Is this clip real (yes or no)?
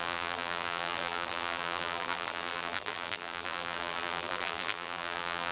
no